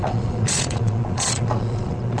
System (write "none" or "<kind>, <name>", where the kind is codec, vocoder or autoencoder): vocoder, Vocos